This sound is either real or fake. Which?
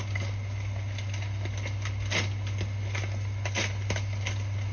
real